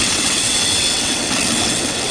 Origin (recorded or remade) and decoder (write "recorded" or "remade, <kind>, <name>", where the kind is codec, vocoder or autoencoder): remade, vocoder, WaveNeXt